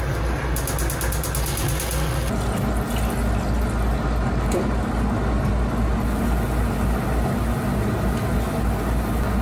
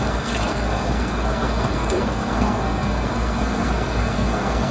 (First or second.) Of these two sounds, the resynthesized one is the second